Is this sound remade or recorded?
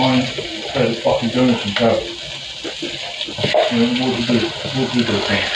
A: recorded